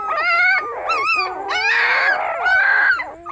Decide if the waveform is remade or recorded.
recorded